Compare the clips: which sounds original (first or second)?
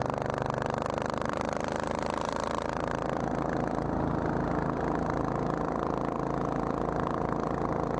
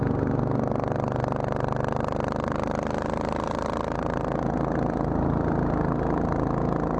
second